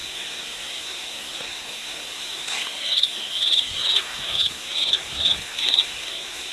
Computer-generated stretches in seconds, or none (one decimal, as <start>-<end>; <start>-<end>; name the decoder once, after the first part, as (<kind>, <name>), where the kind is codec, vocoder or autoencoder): 0.0-6.5 (codec, SNAC)